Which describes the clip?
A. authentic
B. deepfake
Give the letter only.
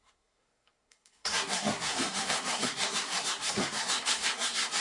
B